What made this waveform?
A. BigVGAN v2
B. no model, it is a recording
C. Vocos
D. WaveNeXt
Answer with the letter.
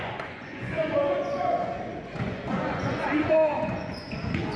C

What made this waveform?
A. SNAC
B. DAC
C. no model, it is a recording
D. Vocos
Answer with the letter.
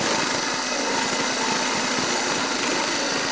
C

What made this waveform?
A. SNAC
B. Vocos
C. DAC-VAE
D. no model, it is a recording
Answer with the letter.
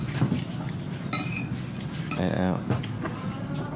D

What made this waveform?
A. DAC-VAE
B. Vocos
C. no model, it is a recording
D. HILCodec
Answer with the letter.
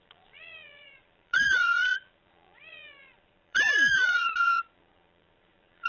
B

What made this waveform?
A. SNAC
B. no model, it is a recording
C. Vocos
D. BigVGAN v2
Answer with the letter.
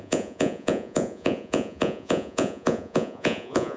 C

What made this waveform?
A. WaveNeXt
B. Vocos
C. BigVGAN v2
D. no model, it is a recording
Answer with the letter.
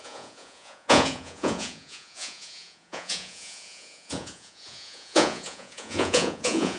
B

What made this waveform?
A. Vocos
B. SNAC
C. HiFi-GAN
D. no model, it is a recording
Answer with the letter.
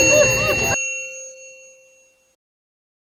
D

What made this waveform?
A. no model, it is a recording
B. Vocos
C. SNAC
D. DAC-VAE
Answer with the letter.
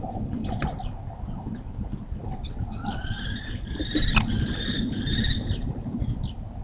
A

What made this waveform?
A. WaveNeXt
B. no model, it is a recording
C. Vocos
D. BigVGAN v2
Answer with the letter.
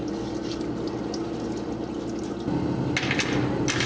B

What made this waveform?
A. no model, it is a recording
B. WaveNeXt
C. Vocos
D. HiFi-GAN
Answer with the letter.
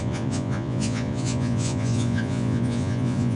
C